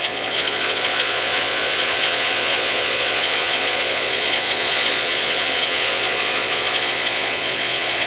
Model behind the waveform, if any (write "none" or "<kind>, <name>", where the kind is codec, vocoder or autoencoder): vocoder, Vocos